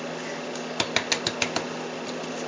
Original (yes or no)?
yes